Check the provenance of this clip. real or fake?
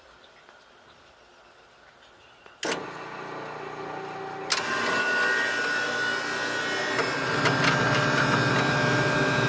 real